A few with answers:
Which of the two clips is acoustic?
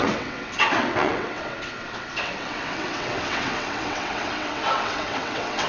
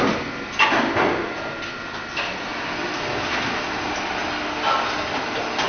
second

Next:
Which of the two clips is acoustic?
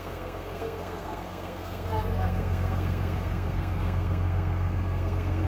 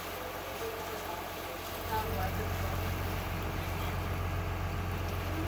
second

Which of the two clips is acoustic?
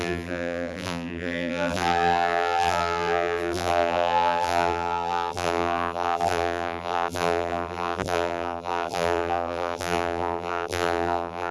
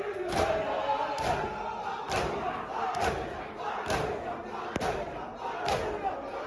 second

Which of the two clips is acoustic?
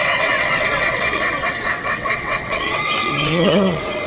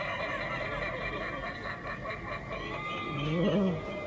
second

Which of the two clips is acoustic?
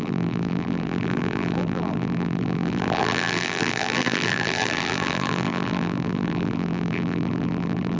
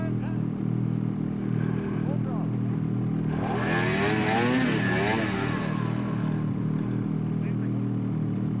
second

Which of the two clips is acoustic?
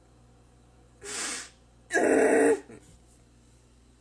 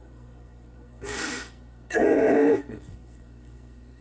first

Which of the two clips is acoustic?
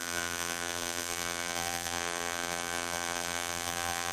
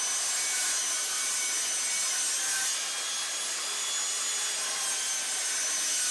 second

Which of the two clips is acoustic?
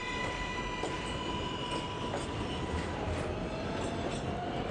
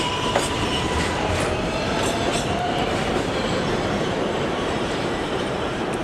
first